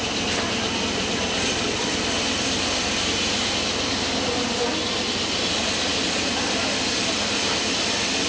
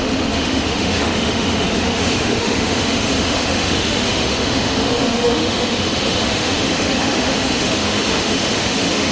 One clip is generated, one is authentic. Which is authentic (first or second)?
first